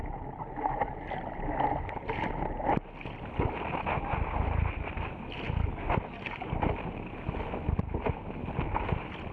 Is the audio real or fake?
real